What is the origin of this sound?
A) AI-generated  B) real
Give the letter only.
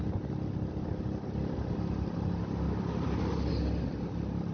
B